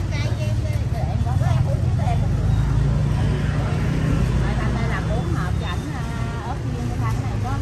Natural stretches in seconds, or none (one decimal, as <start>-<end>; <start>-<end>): 0.0-7.6